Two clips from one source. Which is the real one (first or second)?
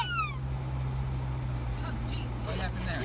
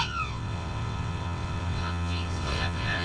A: first